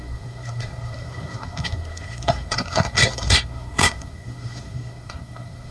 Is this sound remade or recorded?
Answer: remade